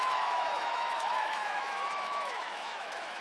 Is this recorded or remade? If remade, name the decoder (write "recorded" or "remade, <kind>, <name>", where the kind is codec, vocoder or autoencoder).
remade, autoencoder, DAC-VAE